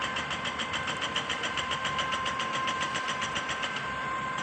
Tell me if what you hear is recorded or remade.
remade